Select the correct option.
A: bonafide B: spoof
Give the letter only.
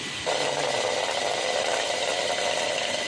A